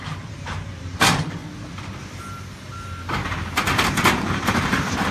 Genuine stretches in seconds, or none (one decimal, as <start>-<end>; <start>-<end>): 1.4-4.2

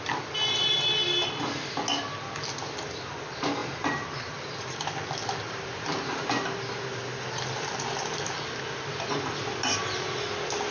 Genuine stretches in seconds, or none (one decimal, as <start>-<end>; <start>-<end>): 0.0-3.6; 8.6-10.7

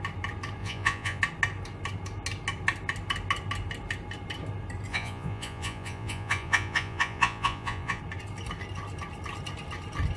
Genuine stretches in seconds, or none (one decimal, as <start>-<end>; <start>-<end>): 0.0-0.6; 1.2-4.9; 8.0-10.2

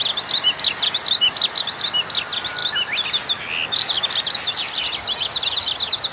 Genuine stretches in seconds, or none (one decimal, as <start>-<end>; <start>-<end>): 0.0-6.1

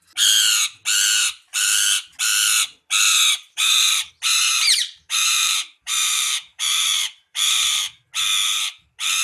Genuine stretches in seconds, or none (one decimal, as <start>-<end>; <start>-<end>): 0.0-3.1; 4.1-4.5; 7.8-9.2

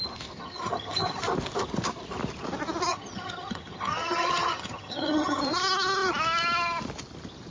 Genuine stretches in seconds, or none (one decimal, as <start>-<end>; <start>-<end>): 0.0-0.4; 1.2-2.9; 5.4-7.5

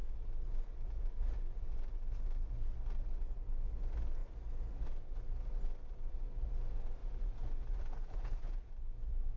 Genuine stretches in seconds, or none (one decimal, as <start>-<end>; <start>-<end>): 0.0-7.0; 8.7-9.4

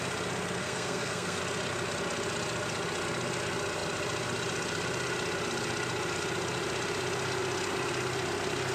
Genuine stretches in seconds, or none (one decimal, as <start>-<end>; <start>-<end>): 0.0-0.6; 1.4-8.7